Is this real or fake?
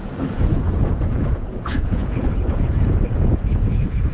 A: fake